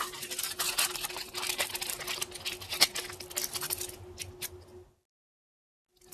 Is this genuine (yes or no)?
yes